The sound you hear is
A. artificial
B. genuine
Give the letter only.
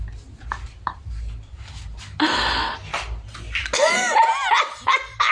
B